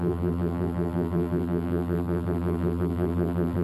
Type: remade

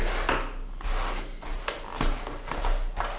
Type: recorded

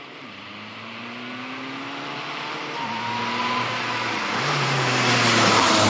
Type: recorded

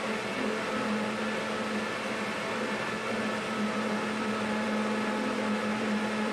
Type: recorded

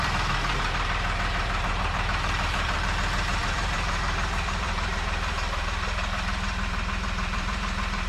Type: remade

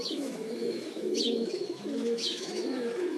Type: remade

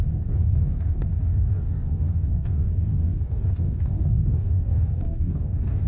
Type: remade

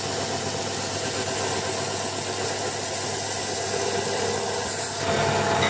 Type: recorded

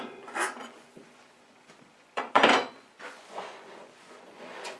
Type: remade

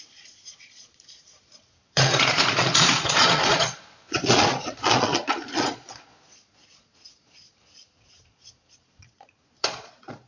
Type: remade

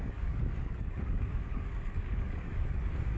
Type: remade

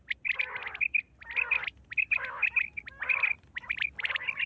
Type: recorded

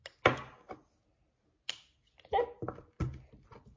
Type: recorded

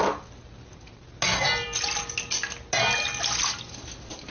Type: recorded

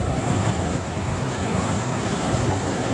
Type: remade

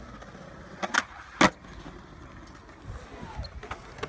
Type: recorded